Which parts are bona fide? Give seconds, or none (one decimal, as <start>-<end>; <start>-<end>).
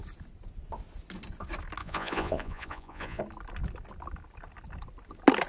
0.0-1.8; 3.2-5.5